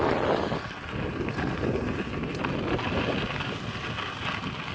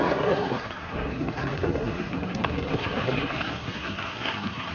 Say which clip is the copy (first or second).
second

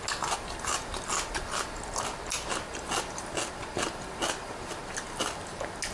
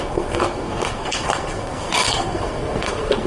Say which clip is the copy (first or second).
second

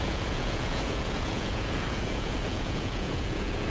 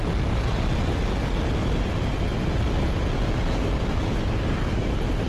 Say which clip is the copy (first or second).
first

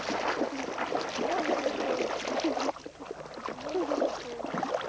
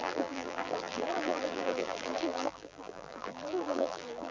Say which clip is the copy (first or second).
second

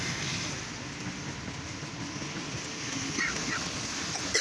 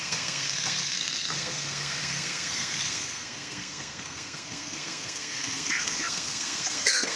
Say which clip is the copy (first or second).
second